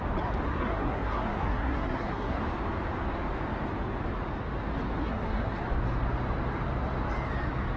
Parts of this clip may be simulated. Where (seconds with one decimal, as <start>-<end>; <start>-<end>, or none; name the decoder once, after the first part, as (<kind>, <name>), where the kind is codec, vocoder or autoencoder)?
0.5-2.4 (codec, SNAC); 5.0-5.6